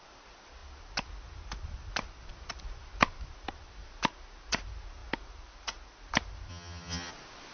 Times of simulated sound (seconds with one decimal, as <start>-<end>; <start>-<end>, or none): 6.5-7.1